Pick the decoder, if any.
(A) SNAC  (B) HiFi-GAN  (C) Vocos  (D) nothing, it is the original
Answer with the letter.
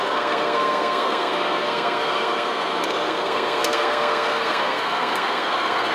A